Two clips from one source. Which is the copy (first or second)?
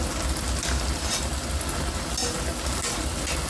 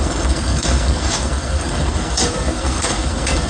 second